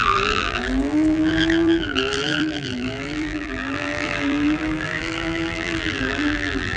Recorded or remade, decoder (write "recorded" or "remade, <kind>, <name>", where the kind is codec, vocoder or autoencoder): remade, vocoder, BigVGAN v2